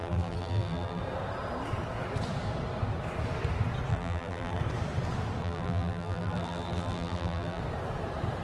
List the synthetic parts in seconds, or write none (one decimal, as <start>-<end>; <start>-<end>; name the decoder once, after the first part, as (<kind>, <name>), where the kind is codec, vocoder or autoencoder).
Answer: 0.0-1.0 (vocoder, BigVGAN v2); 3.9-4.6; 5.4-7.6